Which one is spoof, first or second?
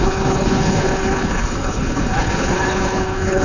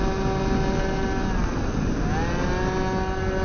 first